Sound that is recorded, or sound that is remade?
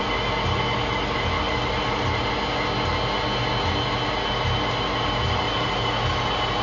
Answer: recorded